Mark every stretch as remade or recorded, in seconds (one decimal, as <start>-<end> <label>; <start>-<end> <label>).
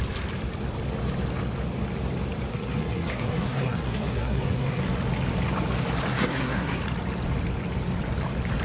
0.0-2.5 recorded; 2.5-4.8 remade; 4.8-6.1 recorded; 6.1-6.8 remade; 6.8-8.6 recorded